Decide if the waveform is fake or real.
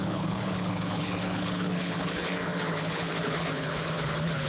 fake